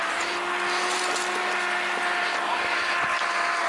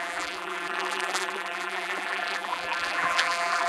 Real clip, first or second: first